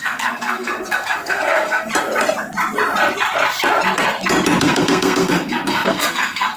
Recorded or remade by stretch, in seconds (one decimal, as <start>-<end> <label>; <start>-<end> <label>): 0.0-1.9 remade; 1.9-4.6 recorded; 4.6-6.6 remade